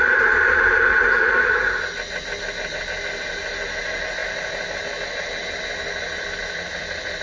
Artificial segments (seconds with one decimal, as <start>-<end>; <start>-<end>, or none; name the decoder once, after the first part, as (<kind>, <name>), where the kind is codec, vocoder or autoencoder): 0.9-1.8 (vocoder, Vocos)